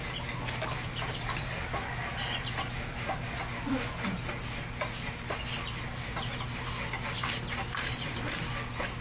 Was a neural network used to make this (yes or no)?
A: no